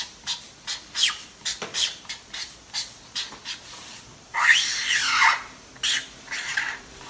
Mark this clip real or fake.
fake